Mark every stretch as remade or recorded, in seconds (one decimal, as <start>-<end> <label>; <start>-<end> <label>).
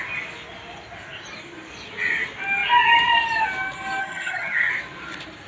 0.0-4.0 recorded; 4.0-4.7 remade; 4.7-5.5 recorded